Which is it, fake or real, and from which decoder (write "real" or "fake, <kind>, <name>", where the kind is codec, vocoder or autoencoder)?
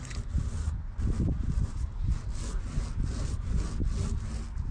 real